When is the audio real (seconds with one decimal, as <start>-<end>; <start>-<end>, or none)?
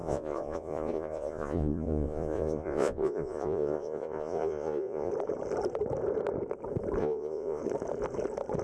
5.1-7.0; 7.6-8.6